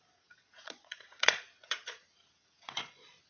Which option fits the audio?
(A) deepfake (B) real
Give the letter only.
A